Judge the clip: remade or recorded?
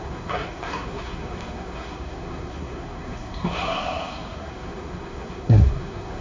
remade